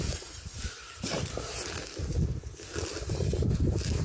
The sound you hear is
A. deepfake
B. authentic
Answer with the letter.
B